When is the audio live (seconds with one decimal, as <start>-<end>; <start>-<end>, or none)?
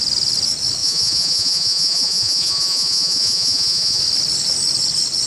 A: 0.0-0.8; 4.0-5.3